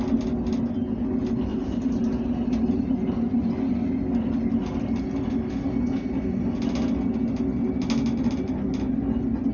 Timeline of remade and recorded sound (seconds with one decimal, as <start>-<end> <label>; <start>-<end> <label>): 0.0-1.5 recorded; 1.5-3.6 remade; 3.6-9.5 recorded